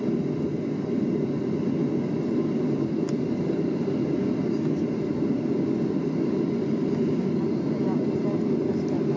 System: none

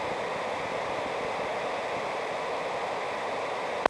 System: none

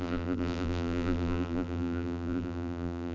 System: vocoder, BigVGAN v2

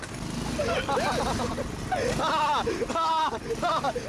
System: none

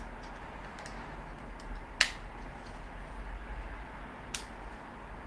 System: none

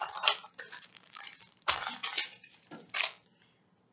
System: vocoder, BigVGAN v2